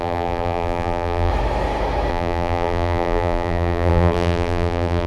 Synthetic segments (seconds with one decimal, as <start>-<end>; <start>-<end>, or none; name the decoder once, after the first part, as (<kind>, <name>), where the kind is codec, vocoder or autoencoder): 0.0-1.3 (vocoder, BigVGAN v2); 2.1-5.1